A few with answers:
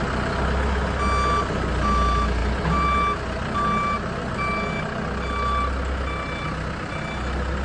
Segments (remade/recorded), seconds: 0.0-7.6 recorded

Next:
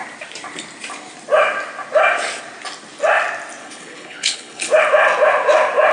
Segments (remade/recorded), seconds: 0.0-3.6 recorded; 3.6-4.8 remade; 4.8-5.9 recorded

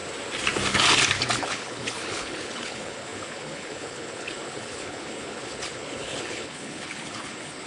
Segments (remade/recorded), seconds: 0.0-1.4 recorded; 1.4-7.7 remade

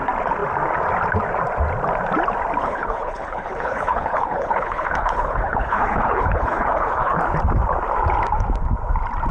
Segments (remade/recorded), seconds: 0.0-2.6 recorded; 2.6-7.2 remade; 7.2-9.3 recorded